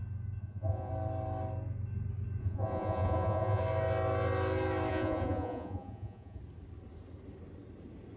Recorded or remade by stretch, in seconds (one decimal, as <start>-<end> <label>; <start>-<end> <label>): 0.0-0.4 recorded; 0.4-0.9 remade; 0.9-2.4 recorded; 2.4-3.6 remade; 3.6-4.9 recorded; 4.9-6.4 remade; 6.4-8.2 recorded